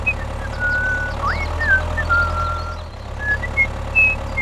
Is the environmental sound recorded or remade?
recorded